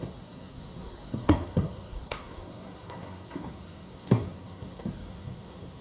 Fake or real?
fake